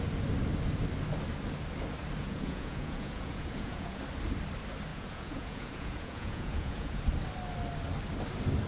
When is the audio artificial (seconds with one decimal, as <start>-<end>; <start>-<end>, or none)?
2.2-4.0; 4.9-7.0